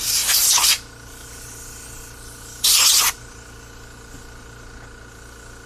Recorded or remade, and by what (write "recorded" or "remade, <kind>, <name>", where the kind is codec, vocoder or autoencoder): recorded